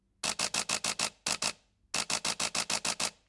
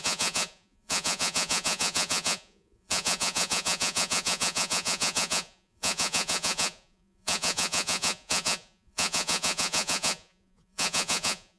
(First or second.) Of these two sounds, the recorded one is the first